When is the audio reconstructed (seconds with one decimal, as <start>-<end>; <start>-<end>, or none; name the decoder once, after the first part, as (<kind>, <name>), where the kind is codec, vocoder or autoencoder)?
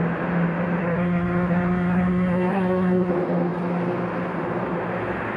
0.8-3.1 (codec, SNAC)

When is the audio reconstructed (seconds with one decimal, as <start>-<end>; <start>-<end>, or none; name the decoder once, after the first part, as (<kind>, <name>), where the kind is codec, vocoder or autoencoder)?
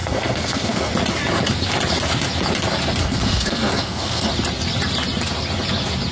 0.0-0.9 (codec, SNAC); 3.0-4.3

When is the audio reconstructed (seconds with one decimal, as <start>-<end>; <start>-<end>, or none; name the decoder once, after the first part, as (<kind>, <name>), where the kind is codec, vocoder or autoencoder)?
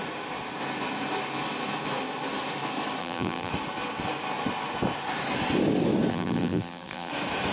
3.0-3.5 (vocoder, BigVGAN v2); 6.1-7.1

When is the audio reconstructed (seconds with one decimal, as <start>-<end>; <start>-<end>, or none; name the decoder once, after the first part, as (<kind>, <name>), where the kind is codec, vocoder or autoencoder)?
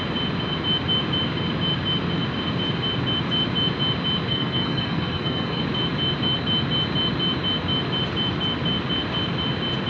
4.3-5.6 (codec, SNAC)